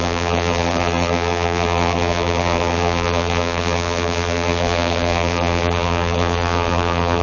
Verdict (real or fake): fake